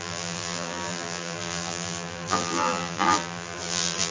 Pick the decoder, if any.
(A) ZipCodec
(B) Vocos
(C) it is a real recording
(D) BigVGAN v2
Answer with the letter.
D